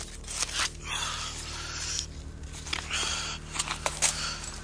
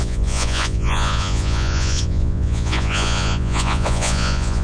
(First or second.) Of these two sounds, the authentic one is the first